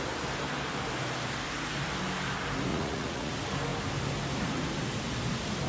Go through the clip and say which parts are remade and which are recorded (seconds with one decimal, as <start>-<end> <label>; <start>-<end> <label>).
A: 0.0-2.7 recorded; 2.7-3.3 remade; 3.3-5.7 recorded